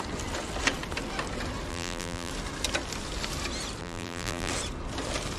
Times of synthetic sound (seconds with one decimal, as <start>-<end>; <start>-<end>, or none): 1.7-2.3; 3.8-4.5